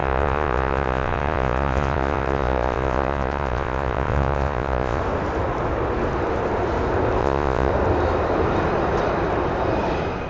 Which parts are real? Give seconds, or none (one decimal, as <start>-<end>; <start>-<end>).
5.0-7.2; 7.7-10.3

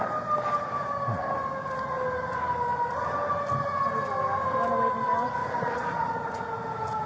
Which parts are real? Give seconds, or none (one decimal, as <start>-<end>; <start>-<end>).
0.0-5.4; 6.5-7.1

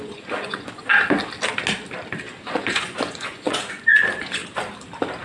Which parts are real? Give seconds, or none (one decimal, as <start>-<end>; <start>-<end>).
0.9-2.4; 4.4-5.2

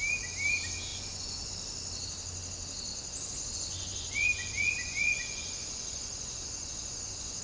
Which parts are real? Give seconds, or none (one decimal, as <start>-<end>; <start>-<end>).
0.0-0.9; 1.5-2.9